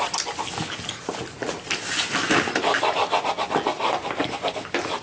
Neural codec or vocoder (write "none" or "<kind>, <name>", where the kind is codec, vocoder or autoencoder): none